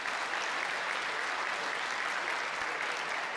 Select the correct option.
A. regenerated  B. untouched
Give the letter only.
B